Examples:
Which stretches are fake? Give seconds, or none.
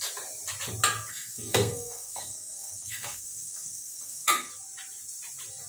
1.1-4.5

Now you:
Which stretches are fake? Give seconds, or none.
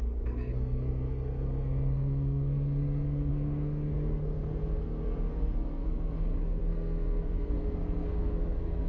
0.0-8.9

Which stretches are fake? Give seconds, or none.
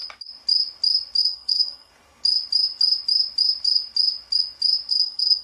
1.2-1.9; 4.9-5.4